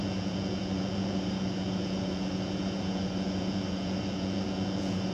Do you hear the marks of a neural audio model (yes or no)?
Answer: yes